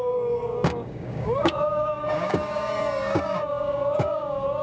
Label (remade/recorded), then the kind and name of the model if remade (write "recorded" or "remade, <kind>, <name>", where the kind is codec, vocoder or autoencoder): remade, codec, DAC